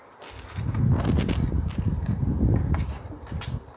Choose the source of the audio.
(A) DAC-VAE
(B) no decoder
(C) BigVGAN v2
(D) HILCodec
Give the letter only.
B